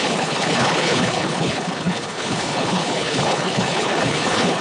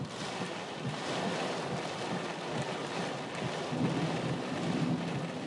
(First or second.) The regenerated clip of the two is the first